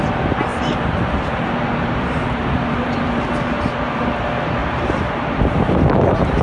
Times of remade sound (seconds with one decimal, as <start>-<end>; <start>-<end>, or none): 0.5-2.9; 4.6-5.7